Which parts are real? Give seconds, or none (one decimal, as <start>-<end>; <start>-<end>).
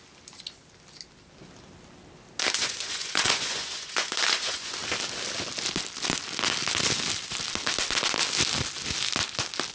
0.0-2.6; 4.7-9.7